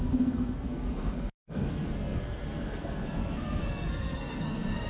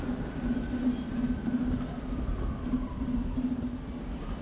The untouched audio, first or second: second